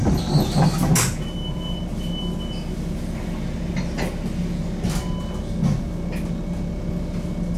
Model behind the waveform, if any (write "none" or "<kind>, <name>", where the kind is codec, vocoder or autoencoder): none